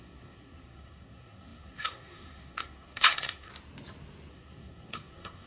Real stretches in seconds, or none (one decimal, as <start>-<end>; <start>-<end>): 3.5-4.3